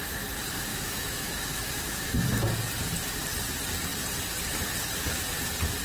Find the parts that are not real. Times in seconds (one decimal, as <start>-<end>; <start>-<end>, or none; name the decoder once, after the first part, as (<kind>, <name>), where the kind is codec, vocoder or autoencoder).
0.7-2.1 (autoencoder, DAC-VAE)